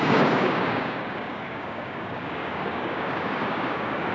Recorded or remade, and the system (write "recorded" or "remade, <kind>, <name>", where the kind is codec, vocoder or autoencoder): remade, codec, DAC